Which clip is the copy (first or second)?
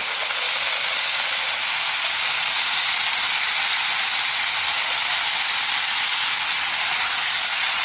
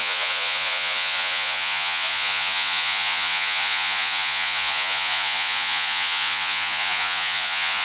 second